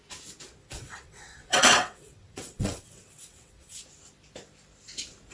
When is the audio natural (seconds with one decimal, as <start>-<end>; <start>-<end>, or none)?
0.0-0.6; 3.8-5.3

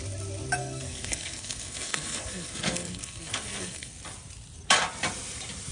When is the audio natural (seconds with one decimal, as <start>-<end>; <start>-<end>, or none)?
0.0-0.6; 3.9-5.7

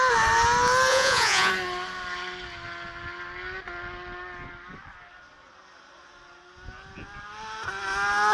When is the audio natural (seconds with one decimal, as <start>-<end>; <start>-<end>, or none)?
0.0-0.9; 1.5-8.3

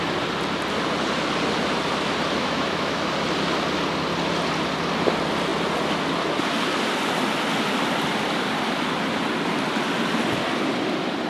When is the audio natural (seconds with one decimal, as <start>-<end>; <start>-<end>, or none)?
0.0-2.4; 3.1-11.3

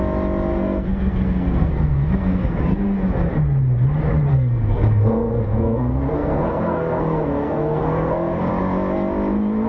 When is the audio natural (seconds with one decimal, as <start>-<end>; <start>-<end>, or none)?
0.0-0.5; 2.6-4.3; 8.5-9.7